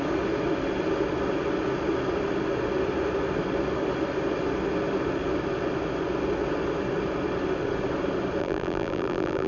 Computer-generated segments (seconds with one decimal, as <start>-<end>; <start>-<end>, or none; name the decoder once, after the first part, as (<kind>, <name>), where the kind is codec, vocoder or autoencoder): 8.4-9.5 (vocoder, BigVGAN v2)